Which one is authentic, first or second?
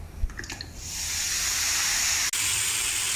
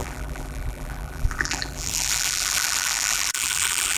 first